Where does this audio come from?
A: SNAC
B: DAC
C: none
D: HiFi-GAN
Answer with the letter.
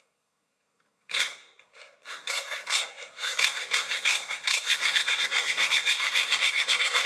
A